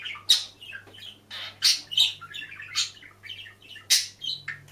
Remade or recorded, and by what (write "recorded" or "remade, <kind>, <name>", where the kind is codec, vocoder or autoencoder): recorded